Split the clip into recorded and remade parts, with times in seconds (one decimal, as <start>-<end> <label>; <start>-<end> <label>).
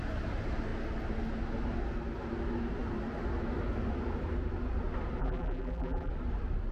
0.0-5.2 recorded; 5.2-6.1 remade; 6.1-6.7 recorded